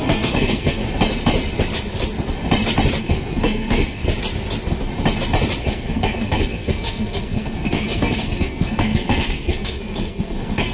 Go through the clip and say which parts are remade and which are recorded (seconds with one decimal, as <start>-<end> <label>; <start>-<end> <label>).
0.0-0.8 remade; 0.8-3.0 recorded; 3.0-4.0 remade; 4.0-5.6 recorded; 5.6-10.7 remade